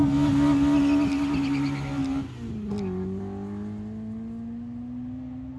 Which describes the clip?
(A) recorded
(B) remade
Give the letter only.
A